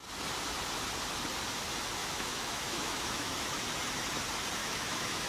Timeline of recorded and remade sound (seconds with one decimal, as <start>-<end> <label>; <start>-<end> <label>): 0.0-2.0 recorded; 2.0-3.6 remade; 3.6-4.6 recorded; 4.6-5.3 remade